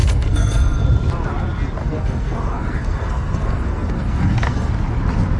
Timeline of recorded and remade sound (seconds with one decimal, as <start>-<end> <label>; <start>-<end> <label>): 0.0-0.8 remade; 0.8-1.8 recorded; 1.8-4.7 remade; 4.7-5.4 recorded